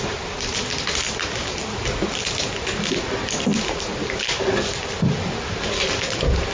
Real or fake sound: real